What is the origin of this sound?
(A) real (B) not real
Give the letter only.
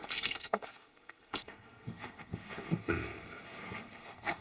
B